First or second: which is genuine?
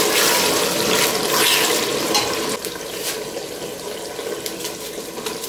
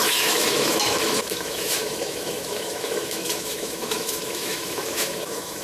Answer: first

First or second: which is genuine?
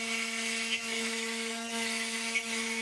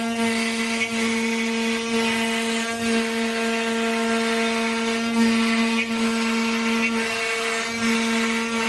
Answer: second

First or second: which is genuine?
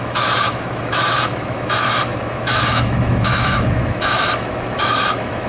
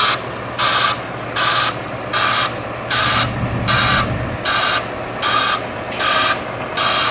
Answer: second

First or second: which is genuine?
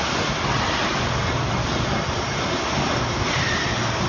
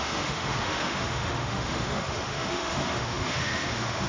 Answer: first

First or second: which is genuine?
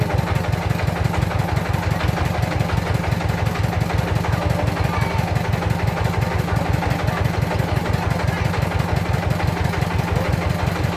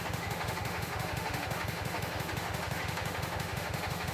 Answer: first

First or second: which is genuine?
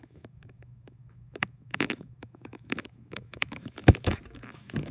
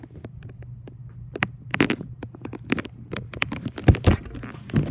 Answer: second